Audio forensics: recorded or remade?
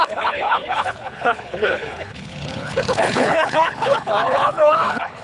remade